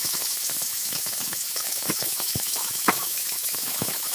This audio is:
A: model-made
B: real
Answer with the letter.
A